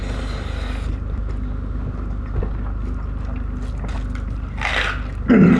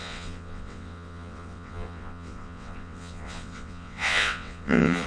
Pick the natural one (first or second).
first